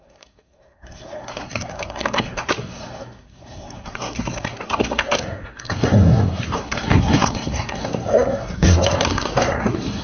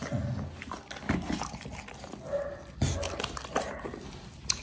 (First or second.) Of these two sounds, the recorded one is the second